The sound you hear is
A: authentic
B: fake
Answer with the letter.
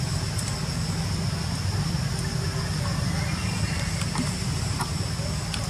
A